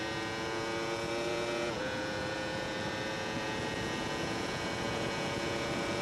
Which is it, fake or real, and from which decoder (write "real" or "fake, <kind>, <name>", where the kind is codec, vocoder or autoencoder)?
fake, vocoder, Vocos